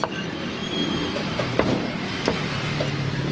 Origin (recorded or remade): remade